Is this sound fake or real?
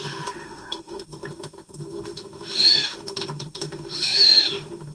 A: fake